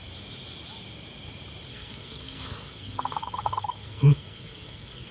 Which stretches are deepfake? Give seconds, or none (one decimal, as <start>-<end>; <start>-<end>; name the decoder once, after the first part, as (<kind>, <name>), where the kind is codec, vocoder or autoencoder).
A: 1.7-5.1 (codec, SNAC)